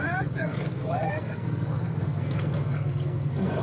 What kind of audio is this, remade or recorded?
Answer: remade